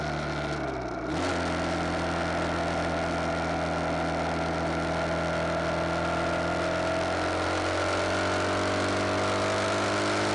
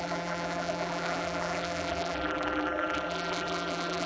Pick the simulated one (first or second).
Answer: second